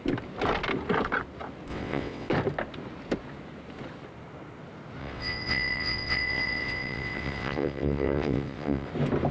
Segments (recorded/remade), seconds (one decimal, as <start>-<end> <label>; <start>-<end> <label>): 0.0-1.7 recorded; 1.7-2.3 remade; 2.3-5.0 recorded; 5.0-8.9 remade; 8.9-9.3 recorded